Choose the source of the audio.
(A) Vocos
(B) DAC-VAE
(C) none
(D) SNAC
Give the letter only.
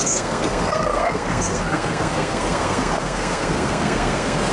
D